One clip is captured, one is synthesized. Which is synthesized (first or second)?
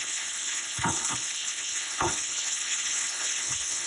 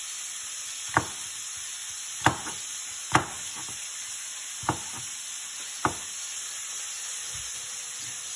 first